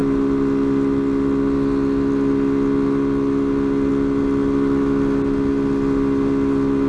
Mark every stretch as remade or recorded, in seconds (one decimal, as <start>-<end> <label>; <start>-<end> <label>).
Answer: 0.0-6.9 recorded